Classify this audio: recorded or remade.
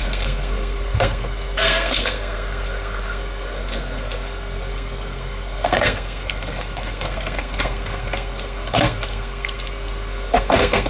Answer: remade